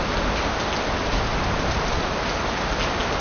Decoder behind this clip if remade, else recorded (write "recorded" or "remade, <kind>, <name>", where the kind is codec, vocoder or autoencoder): recorded